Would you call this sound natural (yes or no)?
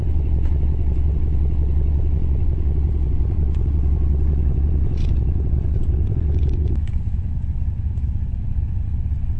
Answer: no